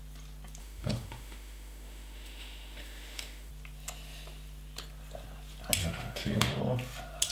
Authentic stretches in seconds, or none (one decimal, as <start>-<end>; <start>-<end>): 0.0-0.6; 3.5-5.8; 6.6-7.3

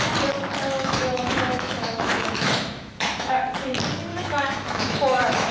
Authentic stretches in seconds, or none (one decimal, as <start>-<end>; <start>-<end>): 0.0-0.8; 3.3-4.1

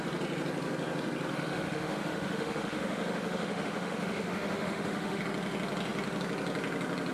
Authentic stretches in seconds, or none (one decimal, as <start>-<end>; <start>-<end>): 0.0-1.3; 5.2-7.1

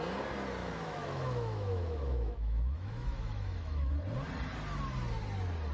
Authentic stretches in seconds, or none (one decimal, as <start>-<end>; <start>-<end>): 0.0-0.6; 3.9-5.7

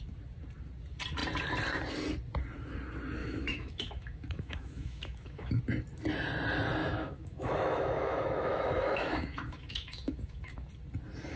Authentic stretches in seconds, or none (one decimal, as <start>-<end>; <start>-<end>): 0.0-3.2; 5.6-6.8; 10.7-11.4

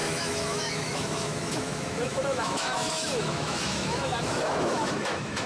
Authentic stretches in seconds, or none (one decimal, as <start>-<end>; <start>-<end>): none

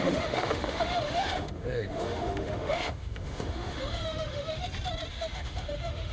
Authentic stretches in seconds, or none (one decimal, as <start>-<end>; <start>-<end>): 4.6-5.1